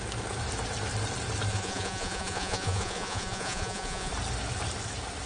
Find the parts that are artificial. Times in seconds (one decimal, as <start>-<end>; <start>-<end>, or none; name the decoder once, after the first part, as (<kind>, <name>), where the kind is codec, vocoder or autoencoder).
1.5-4.1 (vocoder, Vocos)

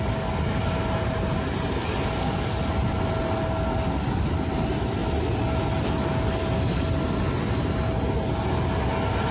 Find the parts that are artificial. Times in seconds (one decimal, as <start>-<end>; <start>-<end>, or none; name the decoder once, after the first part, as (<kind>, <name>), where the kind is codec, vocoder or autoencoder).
none

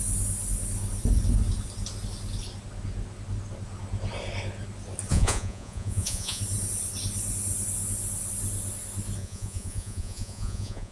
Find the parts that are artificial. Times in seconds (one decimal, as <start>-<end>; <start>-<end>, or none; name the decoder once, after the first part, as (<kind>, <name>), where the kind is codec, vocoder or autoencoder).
5.1-6.4 (vocoder, Vocos); 9.2-10.9

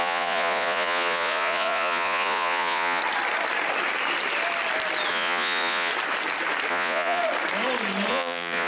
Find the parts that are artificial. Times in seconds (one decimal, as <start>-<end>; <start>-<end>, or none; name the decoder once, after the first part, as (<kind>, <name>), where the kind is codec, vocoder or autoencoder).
0.0-3.0 (vocoder, Vocos); 5.1-5.9; 6.7-7.2; 8.1-8.7

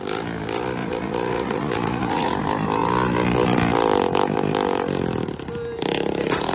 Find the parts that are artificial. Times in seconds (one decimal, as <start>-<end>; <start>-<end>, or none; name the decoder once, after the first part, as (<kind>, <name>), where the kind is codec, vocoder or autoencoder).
0.8-2.3 (vocoder, Vocos)